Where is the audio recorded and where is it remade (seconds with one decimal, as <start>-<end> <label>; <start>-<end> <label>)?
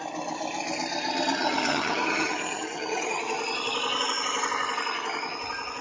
0.0-1.4 recorded; 1.4-3.2 remade; 3.2-5.8 recorded